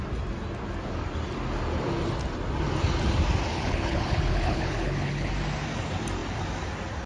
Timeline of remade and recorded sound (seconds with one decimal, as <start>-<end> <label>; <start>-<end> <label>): 0.0-3.5 recorded; 3.5-5.3 remade; 5.3-7.1 recorded